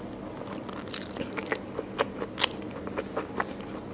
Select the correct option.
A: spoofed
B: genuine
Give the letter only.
B